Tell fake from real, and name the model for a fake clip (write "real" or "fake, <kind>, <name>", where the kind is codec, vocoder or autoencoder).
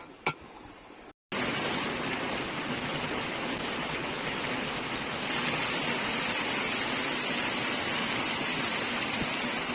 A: real